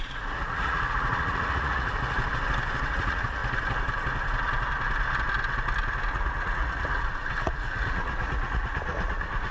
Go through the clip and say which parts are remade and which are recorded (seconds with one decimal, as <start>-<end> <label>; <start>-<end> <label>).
0.0-1.9 remade; 1.9-2.9 recorded; 2.9-3.4 remade; 3.4-6.1 recorded; 6.1-9.5 remade